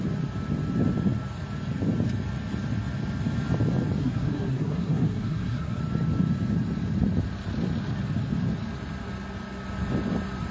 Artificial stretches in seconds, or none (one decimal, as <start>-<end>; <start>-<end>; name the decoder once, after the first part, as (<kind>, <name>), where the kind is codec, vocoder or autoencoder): 4.0-5.8 (codec, SNAC)